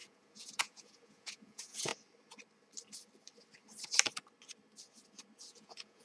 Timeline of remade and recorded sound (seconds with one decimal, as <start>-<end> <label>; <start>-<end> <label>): 0.0-1.9 remade; 1.9-5.5 recorded; 5.5-6.0 remade